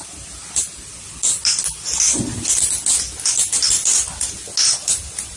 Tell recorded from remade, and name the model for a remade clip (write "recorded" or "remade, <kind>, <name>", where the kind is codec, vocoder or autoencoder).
recorded